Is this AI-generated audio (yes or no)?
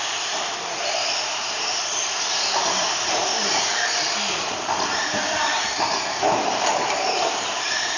yes